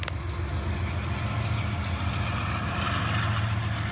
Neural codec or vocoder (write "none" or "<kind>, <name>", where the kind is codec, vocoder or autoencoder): none